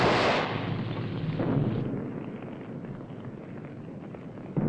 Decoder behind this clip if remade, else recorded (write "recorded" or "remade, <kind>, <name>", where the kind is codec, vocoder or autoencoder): recorded